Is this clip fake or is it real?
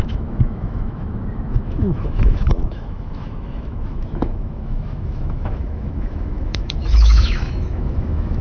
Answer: fake